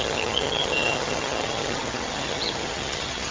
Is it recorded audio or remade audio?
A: remade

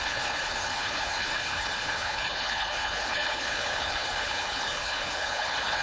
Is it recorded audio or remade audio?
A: remade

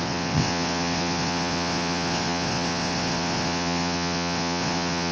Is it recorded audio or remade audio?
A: remade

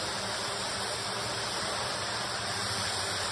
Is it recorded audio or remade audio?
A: remade